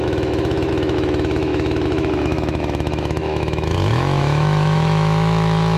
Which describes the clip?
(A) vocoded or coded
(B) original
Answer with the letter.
A